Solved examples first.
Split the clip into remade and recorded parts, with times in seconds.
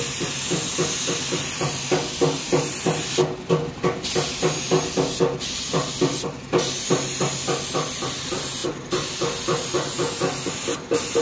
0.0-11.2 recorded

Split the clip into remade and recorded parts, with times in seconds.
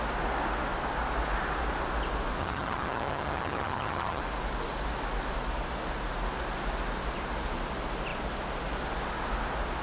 0.0-2.4 recorded; 2.4-4.2 remade; 4.2-9.8 recorded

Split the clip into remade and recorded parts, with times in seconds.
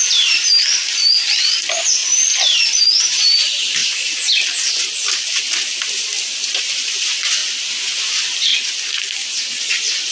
0.0-2.0 remade; 2.0-3.0 recorded; 3.0-3.8 remade; 3.8-6.2 recorded; 6.2-7.4 remade; 7.4-8.1 recorded; 8.1-8.5 remade; 8.5-9.6 recorded; 9.6-10.1 remade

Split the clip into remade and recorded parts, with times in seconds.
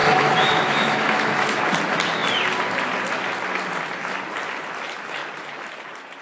0.0-1.6 remade; 1.6-6.2 recorded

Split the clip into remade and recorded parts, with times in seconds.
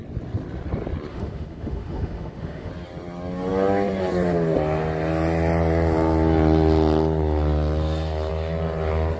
0.0-1.1 recorded; 1.1-2.7 remade; 2.7-9.2 recorded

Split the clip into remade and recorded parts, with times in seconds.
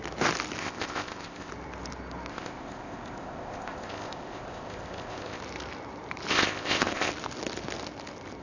0.0-0.6 recorded; 0.6-1.5 remade; 1.5-2.3 recorded; 2.3-5.4 remade; 5.4-6.3 recorded; 6.3-7.1 remade; 7.1-8.4 recorded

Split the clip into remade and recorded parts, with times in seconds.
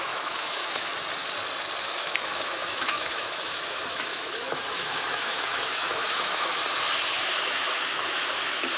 0.0-0.9 remade; 0.9-1.8 recorded; 1.8-6.6 remade; 6.6-7.2 recorded; 7.2-8.8 remade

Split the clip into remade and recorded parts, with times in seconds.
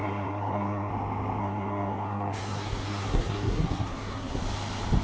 0.0-0.9 remade; 0.9-1.4 recorded; 1.4-4.4 remade; 4.4-5.0 recorded